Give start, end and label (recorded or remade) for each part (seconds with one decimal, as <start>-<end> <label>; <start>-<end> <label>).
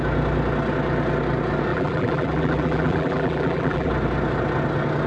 0.0-1.7 recorded; 1.7-3.9 remade; 3.9-5.1 recorded